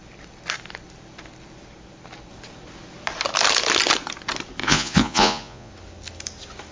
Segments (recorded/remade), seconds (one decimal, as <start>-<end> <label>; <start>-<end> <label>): 0.0-4.6 recorded; 4.6-5.7 remade; 5.7-6.7 recorded